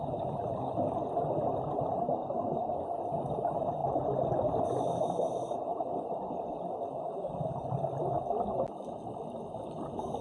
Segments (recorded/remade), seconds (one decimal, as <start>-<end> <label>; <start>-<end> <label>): 0.0-10.2 recorded